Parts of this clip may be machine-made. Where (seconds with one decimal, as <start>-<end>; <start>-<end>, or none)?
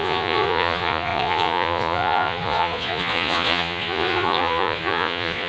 0.0-5.5